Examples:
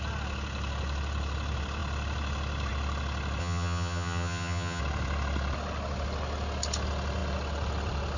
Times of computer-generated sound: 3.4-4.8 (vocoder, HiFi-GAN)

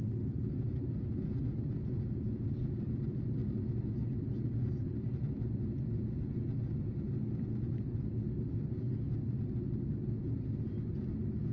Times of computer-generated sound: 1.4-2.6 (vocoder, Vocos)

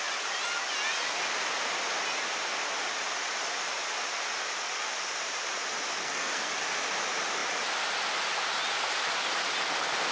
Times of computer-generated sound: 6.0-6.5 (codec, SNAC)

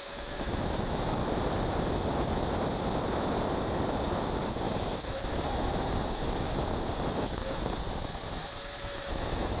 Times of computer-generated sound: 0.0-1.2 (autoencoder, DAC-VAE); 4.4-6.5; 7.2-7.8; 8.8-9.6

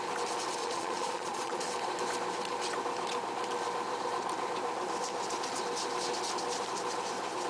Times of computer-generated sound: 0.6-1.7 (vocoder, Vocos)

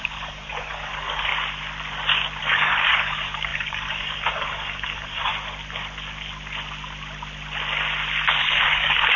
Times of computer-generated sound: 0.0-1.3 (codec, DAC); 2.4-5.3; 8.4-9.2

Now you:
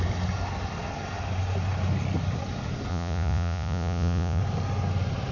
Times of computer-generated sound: 2.9-4.4 (vocoder, Vocos)